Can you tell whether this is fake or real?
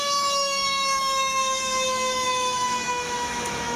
fake